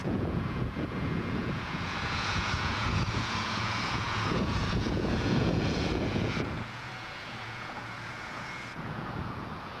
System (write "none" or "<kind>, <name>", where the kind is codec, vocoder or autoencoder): vocoder, Vocos